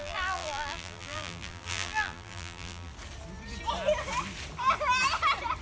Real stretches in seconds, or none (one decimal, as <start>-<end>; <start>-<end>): 2.9-5.6